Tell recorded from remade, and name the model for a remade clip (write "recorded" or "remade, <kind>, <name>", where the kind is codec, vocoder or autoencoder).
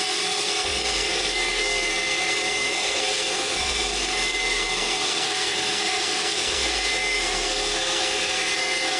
remade, codec, SNAC